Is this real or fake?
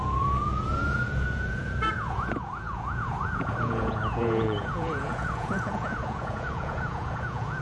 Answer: fake